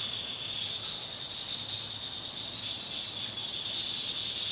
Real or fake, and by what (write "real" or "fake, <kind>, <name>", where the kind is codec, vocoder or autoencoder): real